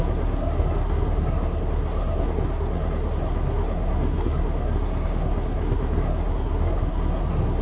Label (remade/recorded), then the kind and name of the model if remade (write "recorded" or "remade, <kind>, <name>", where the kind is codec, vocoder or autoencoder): remade, codec, SNAC